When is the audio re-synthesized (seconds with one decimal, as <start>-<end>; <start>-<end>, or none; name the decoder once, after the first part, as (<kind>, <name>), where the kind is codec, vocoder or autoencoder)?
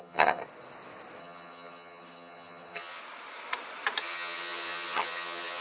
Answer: 0.0-0.4 (vocoder, HiFi-GAN); 1.2-3.0; 4.0-5.6